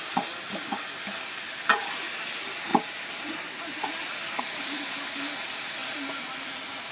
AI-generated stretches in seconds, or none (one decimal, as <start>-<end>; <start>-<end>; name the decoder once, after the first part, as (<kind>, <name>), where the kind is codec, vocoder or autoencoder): none